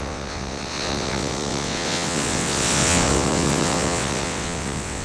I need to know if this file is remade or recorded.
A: remade